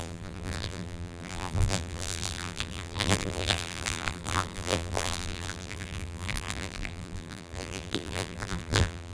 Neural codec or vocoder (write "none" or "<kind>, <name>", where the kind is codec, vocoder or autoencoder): vocoder, BigVGAN v2